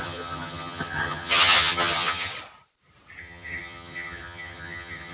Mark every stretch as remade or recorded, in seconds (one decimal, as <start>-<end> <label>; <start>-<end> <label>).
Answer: 0.0-2.3 remade; 2.3-3.2 recorded; 3.2-5.1 remade